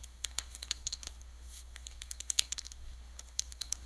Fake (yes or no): yes